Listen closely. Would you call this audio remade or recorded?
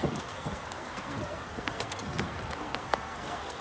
remade